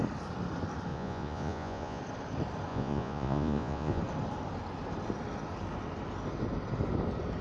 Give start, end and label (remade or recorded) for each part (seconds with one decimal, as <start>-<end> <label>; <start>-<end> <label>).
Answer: 0.0-0.9 recorded; 0.9-2.0 remade; 2.0-2.7 recorded; 2.7-4.0 remade; 4.0-7.4 recorded